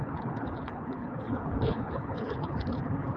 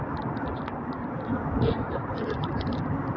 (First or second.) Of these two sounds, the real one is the second